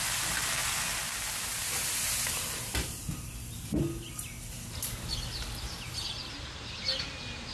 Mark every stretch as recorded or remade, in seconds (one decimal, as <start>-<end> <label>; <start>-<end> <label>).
0.0-7.5 recorded